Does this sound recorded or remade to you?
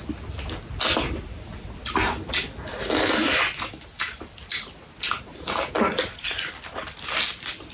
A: recorded